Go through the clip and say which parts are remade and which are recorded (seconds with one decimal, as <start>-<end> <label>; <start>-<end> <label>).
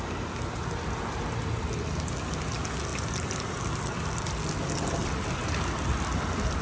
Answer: 0.0-2.9 recorded; 2.9-3.6 remade; 3.6-6.6 recorded